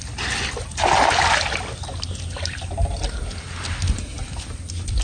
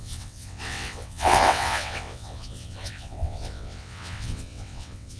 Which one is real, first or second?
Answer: first